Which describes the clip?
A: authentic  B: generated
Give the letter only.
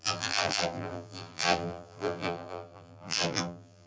B